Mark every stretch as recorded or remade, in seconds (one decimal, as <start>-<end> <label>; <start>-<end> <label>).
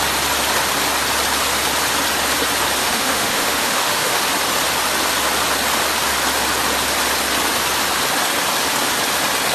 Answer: 0.0-2.8 recorded; 2.8-4.2 remade; 4.2-9.5 recorded